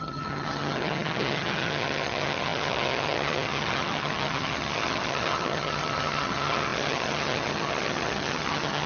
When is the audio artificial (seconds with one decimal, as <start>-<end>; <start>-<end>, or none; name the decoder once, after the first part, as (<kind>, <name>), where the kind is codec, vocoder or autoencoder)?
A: 0.0-8.9 (vocoder, HiFi-GAN)